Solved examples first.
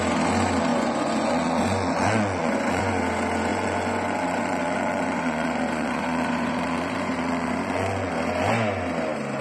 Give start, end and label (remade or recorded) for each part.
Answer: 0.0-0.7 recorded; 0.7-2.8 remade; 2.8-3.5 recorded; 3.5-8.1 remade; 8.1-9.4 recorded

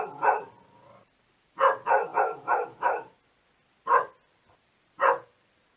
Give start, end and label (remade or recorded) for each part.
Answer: 0.0-5.8 recorded

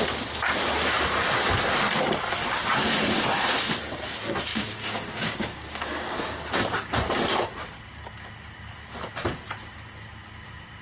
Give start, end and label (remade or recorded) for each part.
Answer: 0.0-4.5 recorded; 4.5-6.2 remade; 6.2-10.8 recorded

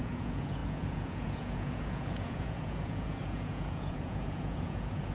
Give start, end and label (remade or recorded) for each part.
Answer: 0.0-5.1 remade

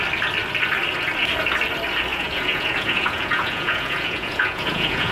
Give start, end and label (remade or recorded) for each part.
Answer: 0.0-2.1 recorded; 2.1-5.1 remade

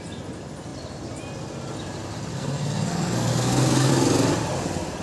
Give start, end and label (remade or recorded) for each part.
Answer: 0.0-2.3 recorded; 2.3-3.9 remade; 3.9-5.0 recorded